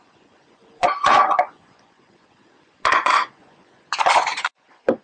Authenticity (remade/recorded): remade